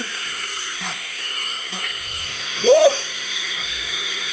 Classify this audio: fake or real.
fake